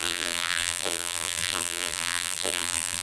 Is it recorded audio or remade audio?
remade